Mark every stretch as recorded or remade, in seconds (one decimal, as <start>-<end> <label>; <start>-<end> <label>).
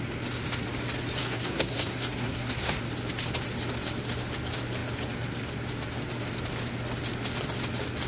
0.0-1.2 recorded; 1.2-2.8 remade; 2.8-8.1 recorded